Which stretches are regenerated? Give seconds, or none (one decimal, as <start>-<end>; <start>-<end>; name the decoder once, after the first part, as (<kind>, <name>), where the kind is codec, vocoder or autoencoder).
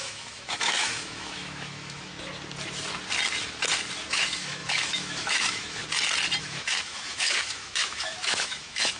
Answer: 0.0-2.1 (autoencoder, DAC-VAE); 4.1-5.8; 6.4-9.0